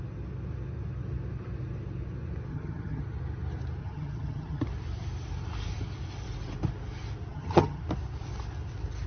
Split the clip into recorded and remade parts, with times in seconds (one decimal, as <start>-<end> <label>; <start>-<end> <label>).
0.0-2.5 recorded; 2.5-3.0 remade; 3.0-3.8 recorded; 3.8-4.6 remade; 4.6-7.3 recorded; 7.3-7.8 remade; 7.8-9.1 recorded